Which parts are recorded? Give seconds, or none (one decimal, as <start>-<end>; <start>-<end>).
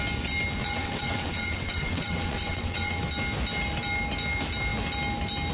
0.0-0.6; 3.0-5.5